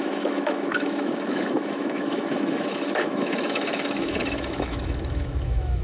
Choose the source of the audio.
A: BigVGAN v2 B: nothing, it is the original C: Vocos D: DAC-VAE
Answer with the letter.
D